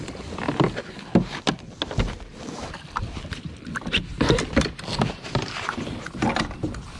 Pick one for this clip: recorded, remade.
recorded